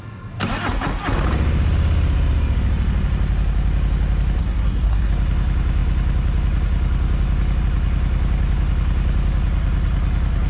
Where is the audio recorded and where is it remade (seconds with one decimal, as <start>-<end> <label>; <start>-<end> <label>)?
0.0-4.4 recorded; 4.4-5.1 remade; 5.1-10.5 recorded